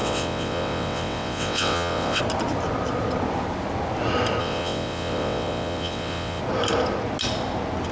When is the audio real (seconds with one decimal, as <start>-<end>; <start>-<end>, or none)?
2.2-4.4; 6.4-7.9